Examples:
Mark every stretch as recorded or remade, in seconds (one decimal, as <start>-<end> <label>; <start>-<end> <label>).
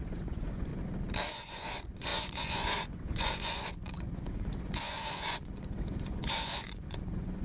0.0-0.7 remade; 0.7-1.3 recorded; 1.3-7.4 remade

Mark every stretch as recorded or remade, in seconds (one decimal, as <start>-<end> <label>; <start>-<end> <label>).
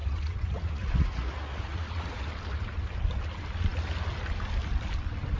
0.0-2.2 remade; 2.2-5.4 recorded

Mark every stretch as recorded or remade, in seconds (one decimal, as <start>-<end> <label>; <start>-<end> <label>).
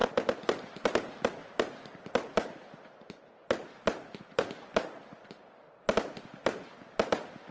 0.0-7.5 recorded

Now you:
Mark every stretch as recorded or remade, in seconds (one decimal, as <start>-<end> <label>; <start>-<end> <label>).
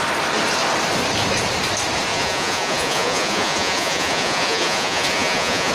0.0-2.1 recorded; 2.1-5.7 remade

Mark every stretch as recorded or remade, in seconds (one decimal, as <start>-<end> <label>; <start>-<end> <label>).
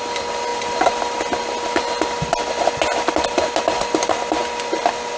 0.0-5.2 recorded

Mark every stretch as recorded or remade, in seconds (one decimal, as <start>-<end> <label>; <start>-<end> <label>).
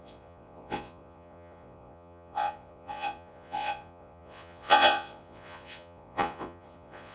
0.0-7.1 remade